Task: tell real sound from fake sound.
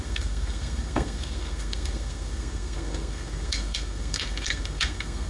fake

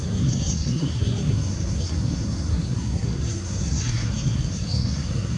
fake